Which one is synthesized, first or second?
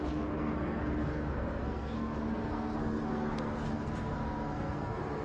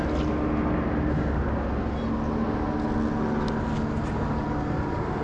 first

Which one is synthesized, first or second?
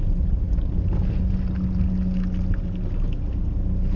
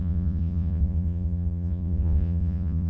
second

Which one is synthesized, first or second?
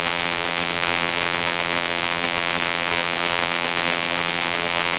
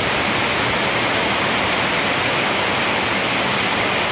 first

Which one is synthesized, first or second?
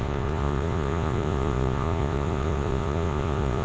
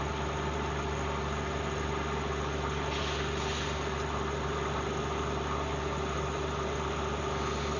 first